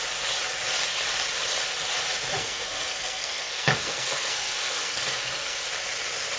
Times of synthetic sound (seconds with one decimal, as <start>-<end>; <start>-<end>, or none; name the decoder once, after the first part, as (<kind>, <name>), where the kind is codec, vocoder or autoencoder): 2.4-5.6 (codec, SNAC)